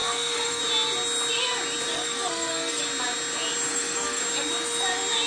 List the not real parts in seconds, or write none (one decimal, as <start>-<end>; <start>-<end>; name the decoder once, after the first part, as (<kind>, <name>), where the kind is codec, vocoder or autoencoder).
0.0-0.6 (codec, SNAC); 1.9-2.8; 3.7-4.2